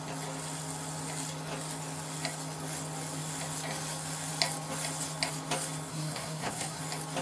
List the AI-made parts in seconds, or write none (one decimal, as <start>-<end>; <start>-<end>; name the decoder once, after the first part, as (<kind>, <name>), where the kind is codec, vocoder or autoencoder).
5.9-6.8 (codec, SNAC)

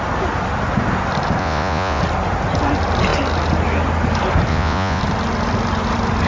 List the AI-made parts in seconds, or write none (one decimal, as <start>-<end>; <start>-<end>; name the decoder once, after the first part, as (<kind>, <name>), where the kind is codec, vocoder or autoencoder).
1.4-2.0 (vocoder, Vocos); 4.5-5.0

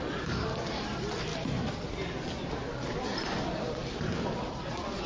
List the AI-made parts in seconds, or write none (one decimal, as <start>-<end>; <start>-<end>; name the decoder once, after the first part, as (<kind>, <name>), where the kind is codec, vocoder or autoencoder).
1.3-4.4 (vocoder, BigVGAN v2)

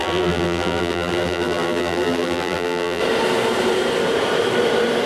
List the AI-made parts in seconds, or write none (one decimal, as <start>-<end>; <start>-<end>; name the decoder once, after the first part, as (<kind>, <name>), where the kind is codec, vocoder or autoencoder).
0.0-3.0 (vocoder, BigVGAN v2)

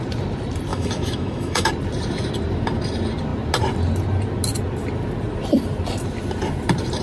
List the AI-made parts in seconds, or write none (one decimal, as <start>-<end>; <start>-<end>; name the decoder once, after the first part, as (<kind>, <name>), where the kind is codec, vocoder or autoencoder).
0.7-1.7 (autoencoder, DAC-VAE)